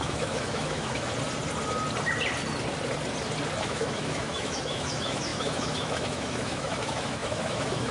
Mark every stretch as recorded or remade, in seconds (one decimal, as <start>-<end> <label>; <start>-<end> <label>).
0.0-1.1 remade; 1.1-3.6 recorded; 3.6-7.9 remade

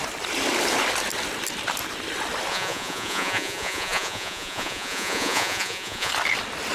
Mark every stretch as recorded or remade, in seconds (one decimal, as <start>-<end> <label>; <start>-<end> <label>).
0.0-2.5 recorded; 2.5-6.1 remade; 6.1-6.7 recorded

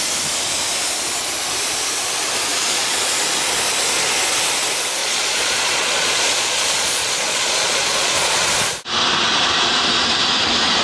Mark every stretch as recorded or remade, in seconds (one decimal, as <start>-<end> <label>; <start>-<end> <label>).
0.0-2.5 recorded; 2.5-3.0 remade; 3.0-5.0 recorded; 5.0-8.5 remade; 8.5-10.8 recorded

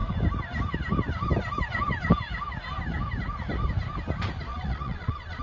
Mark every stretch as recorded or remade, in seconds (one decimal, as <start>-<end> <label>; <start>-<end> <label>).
0.0-4.5 recorded; 4.5-5.4 remade

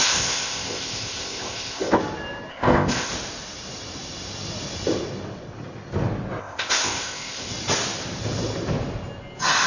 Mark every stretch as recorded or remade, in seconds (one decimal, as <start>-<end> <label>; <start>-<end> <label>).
0.0-2.0 remade; 2.0-2.5 recorded; 2.5-3.1 remade; 3.1-6.4 recorded; 6.4-7.5 remade; 7.5-9.7 recorded

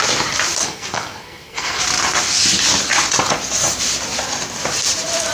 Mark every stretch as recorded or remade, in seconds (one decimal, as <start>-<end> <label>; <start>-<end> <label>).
0.0-0.6 recorded; 0.6-1.8 remade; 1.8-5.3 recorded

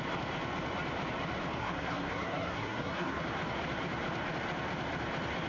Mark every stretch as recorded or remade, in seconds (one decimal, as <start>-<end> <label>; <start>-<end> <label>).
0.0-1.6 recorded; 1.6-3.2 remade; 3.2-5.5 recorded

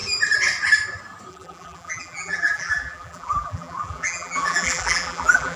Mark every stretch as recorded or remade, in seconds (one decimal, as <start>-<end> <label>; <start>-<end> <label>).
0.0-1.3 recorded; 1.3-5.6 remade